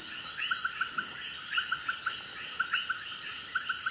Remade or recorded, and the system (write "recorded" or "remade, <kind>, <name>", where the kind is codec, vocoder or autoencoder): recorded